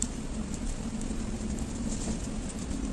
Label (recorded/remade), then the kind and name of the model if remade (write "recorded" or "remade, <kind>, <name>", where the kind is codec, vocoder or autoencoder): remade, vocoder, BigVGAN v2